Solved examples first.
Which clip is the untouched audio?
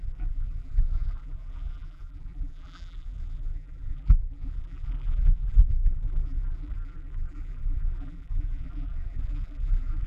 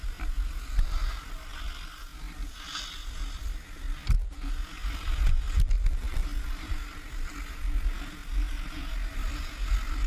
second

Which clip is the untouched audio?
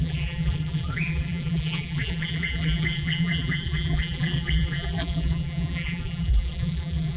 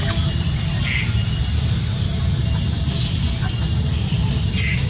second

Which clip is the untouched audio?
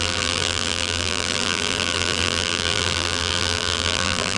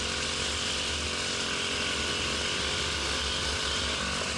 second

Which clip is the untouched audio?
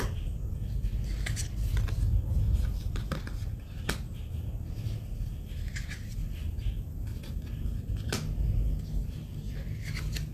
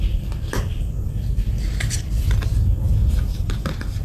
first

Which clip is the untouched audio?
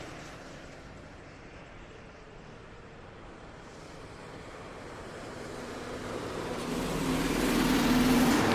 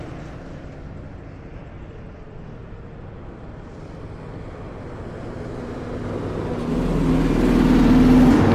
second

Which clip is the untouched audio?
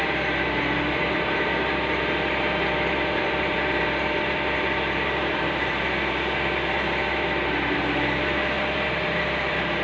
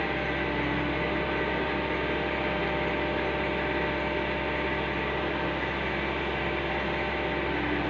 second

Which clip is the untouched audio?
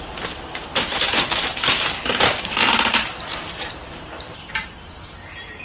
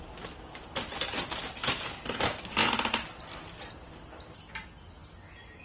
second